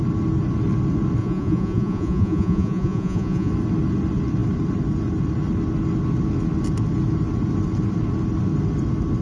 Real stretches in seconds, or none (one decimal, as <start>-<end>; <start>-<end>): 0.0-1.2; 3.5-9.2